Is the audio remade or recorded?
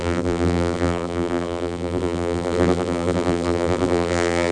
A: remade